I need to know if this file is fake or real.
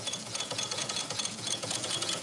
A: fake